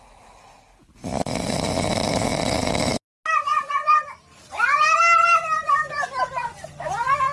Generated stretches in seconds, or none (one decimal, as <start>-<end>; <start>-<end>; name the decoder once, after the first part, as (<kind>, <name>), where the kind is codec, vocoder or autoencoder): 2.3-3.0 (vocoder, BigVGAN v2); 5.6-6.3